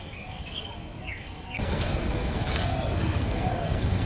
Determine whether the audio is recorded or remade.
remade